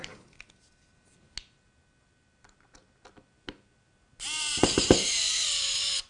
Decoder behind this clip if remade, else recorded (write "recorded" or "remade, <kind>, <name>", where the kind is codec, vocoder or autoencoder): recorded